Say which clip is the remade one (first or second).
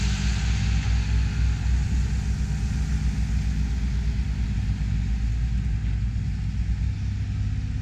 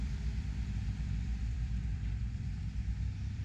second